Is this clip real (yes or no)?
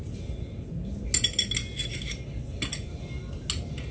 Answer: yes